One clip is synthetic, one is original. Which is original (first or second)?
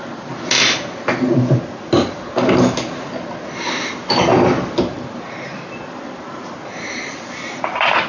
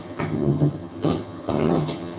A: first